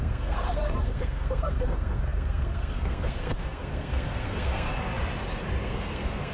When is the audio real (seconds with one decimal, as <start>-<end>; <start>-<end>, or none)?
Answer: 4.7-5.6